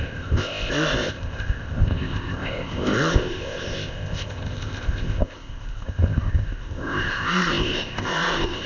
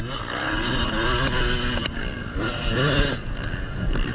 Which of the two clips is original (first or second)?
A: second